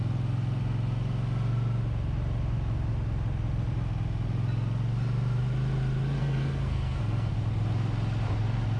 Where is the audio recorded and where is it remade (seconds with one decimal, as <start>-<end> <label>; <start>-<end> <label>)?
0.0-6.2 recorded; 6.2-7.3 remade; 7.3-8.8 recorded

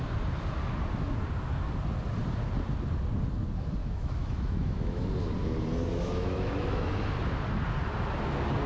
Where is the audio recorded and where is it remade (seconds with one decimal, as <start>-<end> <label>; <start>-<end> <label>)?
0.0-3.8 recorded; 3.8-5.1 remade; 5.1-5.9 recorded; 5.9-7.0 remade; 7.0-8.7 recorded

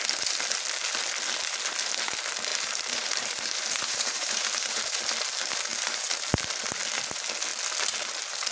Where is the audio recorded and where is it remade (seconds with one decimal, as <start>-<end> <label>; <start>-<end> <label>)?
0.0-2.5 recorded; 2.5-5.0 remade; 5.0-5.7 recorded; 5.7-6.2 remade; 6.2-8.5 recorded

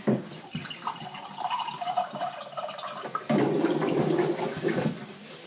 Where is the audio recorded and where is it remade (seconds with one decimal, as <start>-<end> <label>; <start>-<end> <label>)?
0.0-5.5 recorded

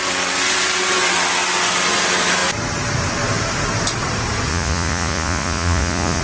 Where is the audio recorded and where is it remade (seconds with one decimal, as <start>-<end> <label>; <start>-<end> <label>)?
0.0-4.5 recorded; 4.5-6.2 remade

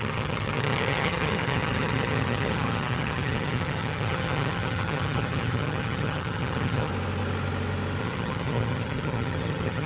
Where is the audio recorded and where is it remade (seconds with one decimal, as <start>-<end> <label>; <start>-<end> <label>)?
0.0-6.9 remade; 6.9-8.0 recorded; 8.0-9.9 remade